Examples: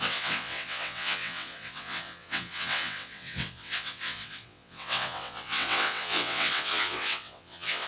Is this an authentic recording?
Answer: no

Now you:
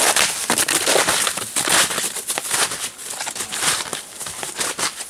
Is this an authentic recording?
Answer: yes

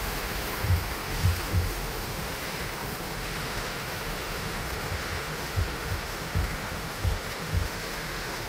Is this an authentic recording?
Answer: no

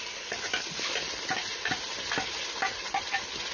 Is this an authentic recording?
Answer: yes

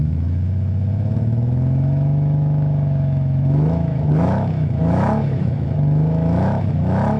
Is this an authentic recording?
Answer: no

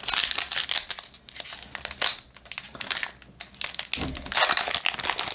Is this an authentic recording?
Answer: yes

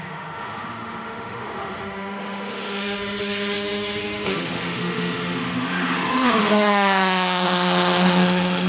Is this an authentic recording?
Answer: no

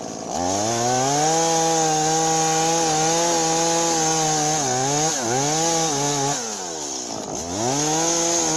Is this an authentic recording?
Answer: yes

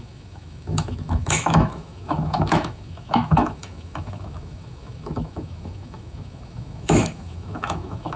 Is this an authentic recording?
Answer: no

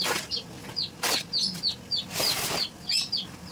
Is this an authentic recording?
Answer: no